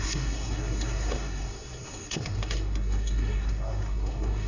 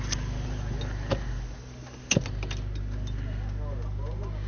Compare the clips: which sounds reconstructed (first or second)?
first